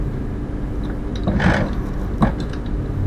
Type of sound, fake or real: real